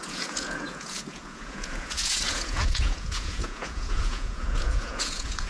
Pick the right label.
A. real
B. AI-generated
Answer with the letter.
B